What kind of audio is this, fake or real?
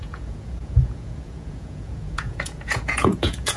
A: fake